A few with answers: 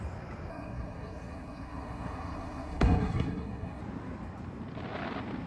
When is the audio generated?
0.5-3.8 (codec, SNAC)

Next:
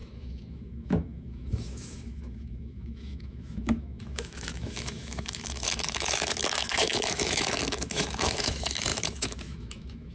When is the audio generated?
0.0-10.1 (autoencoder, DAC-VAE)

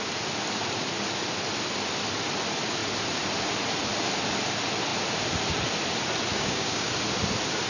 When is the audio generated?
6.3-6.9 (codec, DAC)

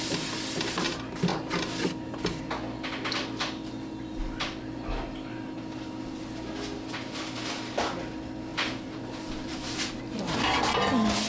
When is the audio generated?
8.5-10.8 (vocoder, BigVGAN v2)